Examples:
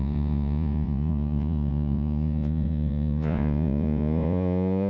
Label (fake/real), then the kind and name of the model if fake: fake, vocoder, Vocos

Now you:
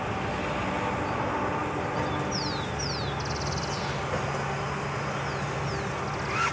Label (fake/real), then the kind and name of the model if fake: real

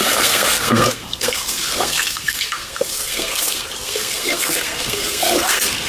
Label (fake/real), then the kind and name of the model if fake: fake, codec, SNAC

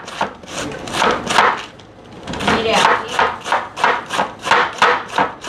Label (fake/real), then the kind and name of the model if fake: real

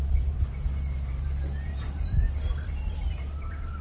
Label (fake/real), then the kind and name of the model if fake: fake, vocoder, BigVGAN v2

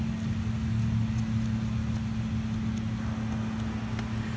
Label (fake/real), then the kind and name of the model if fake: real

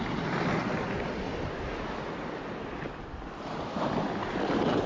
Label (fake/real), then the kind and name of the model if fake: real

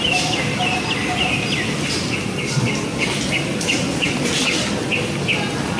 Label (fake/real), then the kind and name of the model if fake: real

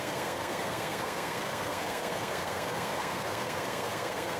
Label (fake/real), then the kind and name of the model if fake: fake, codec, SNAC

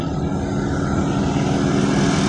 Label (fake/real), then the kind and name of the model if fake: real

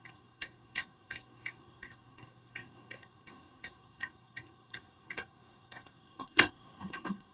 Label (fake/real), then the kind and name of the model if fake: fake, codec, SNAC